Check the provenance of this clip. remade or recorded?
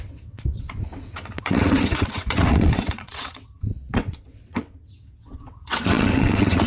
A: remade